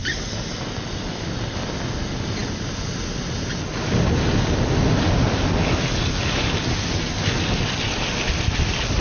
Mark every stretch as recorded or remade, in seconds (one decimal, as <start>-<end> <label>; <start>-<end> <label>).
0.0-1.6 remade; 1.6-9.0 recorded